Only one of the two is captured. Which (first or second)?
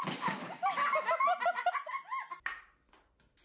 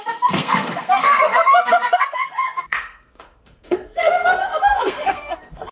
first